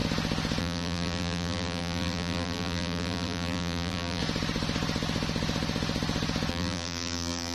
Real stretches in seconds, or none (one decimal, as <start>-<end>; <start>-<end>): 0.0-0.6; 4.2-6.5